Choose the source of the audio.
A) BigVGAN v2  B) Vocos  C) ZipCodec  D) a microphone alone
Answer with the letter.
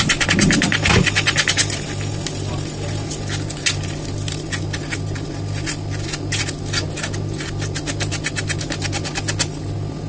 D